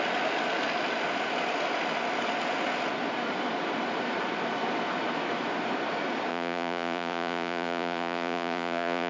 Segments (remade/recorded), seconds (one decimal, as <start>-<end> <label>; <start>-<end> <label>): 0.0-6.3 recorded; 6.3-9.1 remade